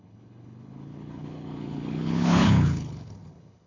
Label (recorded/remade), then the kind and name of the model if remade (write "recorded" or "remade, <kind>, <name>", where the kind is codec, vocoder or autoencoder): remade, codec, HILCodec